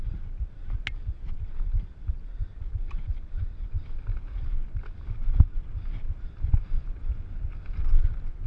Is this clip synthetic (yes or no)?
no